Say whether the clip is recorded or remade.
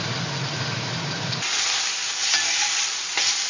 recorded